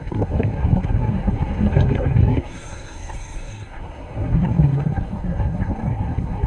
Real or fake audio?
fake